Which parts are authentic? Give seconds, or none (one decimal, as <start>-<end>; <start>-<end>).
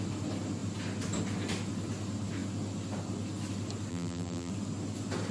0.0-3.9; 4.5-5.3